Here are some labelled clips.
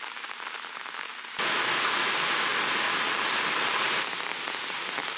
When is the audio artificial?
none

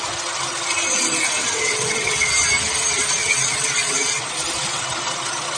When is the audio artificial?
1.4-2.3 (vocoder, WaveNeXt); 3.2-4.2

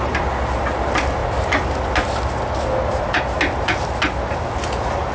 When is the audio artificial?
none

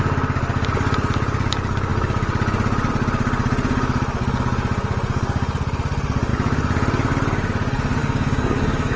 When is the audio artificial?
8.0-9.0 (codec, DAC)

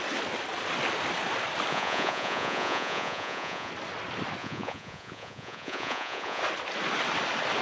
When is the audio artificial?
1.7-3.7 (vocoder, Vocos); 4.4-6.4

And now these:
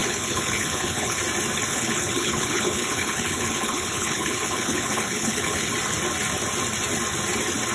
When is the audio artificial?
0.0-1.2 (codec, HILCodec); 1.7-5.7